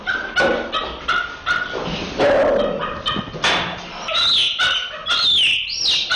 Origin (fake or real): real